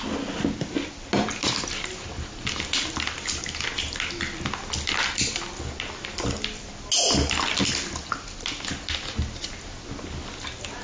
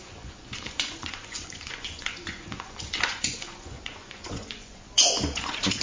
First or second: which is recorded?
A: first